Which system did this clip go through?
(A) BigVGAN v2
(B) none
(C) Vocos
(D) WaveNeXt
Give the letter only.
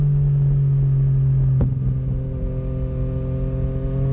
B